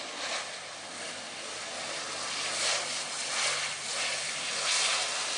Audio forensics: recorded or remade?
recorded